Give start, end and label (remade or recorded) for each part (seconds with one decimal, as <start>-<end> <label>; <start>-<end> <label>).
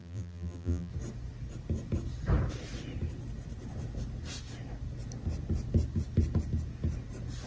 0.0-0.9 remade; 0.9-7.5 recorded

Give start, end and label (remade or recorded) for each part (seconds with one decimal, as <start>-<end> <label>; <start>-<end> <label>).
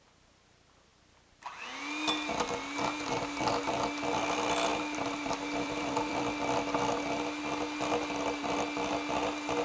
0.0-4.7 recorded; 4.7-6.2 remade; 6.2-9.6 recorded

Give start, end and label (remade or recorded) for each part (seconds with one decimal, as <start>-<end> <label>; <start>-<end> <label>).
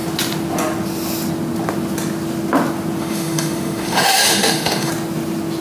0.0-3.0 recorded; 3.0-4.9 remade; 4.9-5.6 recorded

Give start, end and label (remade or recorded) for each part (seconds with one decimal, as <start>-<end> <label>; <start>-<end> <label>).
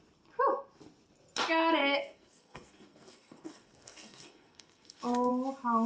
0.0-1.8 recorded; 1.8-5.3 remade; 5.3-5.9 recorded